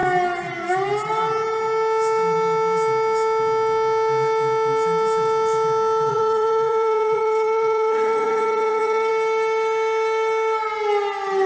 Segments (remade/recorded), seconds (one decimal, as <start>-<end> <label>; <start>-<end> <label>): 0.0-6.1 recorded; 6.1-9.1 remade; 9.1-11.5 recorded